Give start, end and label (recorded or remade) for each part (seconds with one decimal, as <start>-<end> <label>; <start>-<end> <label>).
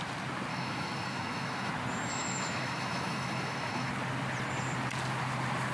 0.0-0.5 recorded; 0.5-1.7 remade; 1.7-2.1 recorded; 2.1-3.9 remade; 3.9-5.7 recorded